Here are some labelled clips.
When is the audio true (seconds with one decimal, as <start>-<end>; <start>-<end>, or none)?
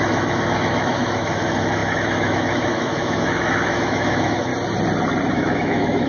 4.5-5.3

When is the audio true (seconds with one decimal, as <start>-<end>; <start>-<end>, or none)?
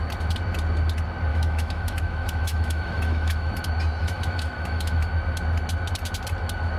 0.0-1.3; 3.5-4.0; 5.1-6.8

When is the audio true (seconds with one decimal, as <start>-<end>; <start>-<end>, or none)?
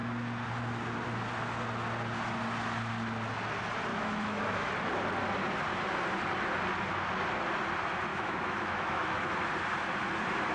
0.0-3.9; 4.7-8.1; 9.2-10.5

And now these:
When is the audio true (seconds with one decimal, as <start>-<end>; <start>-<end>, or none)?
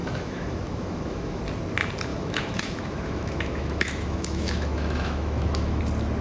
1.4-2.1; 5.8-6.2